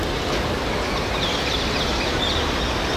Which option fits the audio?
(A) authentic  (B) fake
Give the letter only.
A